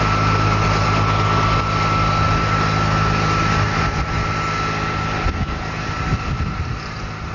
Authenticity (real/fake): real